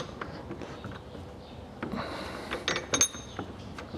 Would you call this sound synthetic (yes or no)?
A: no